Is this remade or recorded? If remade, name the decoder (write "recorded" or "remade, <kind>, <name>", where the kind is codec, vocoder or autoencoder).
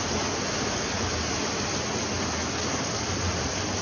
recorded